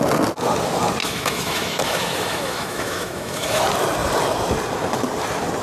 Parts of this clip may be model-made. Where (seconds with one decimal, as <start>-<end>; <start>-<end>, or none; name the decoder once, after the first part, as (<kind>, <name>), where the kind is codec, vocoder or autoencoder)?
1.0-3.6 (autoencoder, DAC-VAE)